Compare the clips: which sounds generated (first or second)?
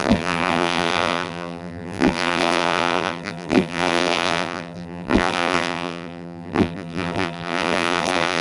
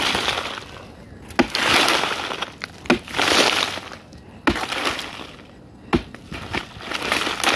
first